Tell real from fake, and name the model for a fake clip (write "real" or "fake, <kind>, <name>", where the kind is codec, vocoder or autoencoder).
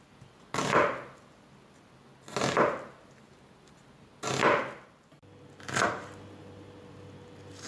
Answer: real